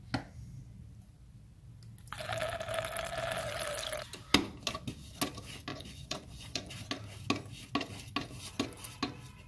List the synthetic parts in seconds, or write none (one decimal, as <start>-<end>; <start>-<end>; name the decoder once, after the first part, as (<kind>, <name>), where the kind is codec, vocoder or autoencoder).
5.7-6.7 (vocoder, Vocos)